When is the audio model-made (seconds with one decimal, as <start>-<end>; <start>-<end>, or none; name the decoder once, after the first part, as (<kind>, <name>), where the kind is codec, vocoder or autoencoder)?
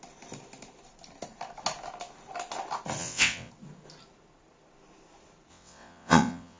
3.0-3.5 (vocoder, WaveNeXt); 5.5-6.6